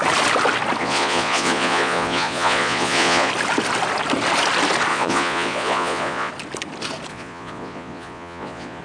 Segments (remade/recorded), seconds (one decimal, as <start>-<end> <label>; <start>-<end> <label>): 0.0-0.8 recorded; 0.8-3.3 remade; 3.3-4.9 recorded; 4.9-6.3 remade; 6.3-7.1 recorded; 7.1-8.8 remade